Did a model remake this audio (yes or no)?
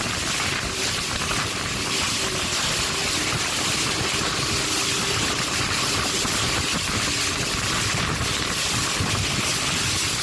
no